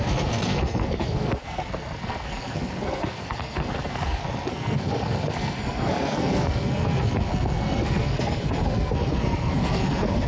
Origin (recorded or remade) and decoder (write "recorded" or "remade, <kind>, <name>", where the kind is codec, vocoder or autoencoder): remade, codec, SNAC